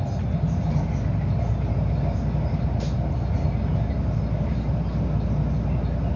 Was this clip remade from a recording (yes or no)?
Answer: no